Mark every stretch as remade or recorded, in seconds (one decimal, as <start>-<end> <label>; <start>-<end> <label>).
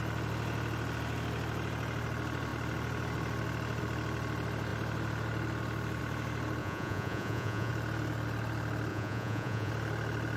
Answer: 0.0-6.6 recorded; 6.6-7.7 remade; 7.7-8.9 recorded; 8.9-9.7 remade; 9.7-10.4 recorded